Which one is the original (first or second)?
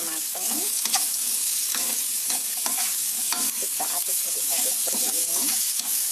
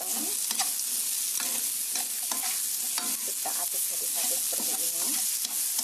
second